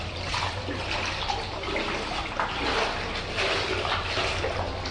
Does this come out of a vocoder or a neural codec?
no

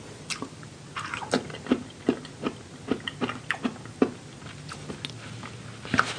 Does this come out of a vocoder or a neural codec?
no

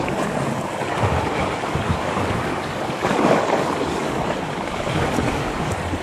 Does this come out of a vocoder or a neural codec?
yes